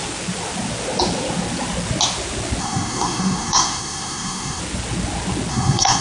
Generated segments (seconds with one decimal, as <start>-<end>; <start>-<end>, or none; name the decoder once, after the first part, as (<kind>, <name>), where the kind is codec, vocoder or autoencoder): 2.6-4.6 (codec, SNAC); 5.5-6.0